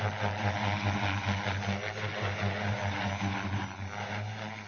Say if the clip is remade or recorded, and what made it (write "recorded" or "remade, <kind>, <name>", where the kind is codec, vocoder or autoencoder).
recorded